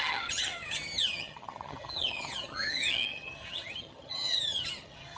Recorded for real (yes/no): no